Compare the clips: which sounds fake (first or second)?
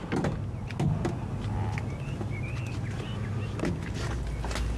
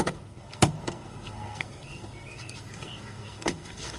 second